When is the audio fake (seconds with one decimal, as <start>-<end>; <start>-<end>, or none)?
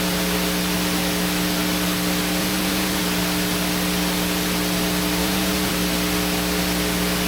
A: 2.4-3.0; 5.2-5.7